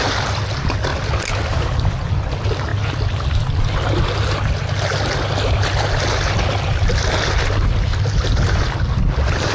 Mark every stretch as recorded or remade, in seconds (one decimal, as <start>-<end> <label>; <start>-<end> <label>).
0.0-9.5 recorded